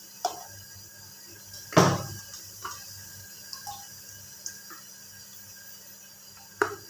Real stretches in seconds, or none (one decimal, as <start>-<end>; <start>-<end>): 0.0-6.9